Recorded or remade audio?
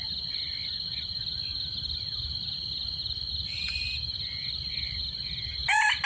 recorded